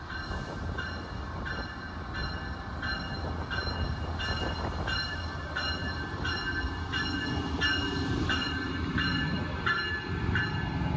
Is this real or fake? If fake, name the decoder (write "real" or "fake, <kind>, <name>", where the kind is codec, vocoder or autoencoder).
real